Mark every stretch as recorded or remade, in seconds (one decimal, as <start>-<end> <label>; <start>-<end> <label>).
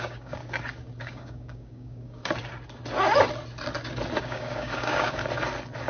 0.0-0.4 remade; 0.4-1.0 recorded; 1.0-2.2 remade; 2.2-4.2 recorded; 4.2-5.2 remade; 5.2-5.9 recorded